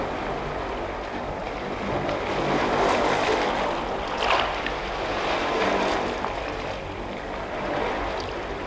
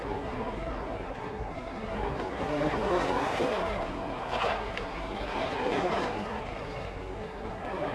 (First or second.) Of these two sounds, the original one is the first